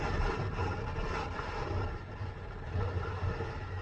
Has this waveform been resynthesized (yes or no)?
no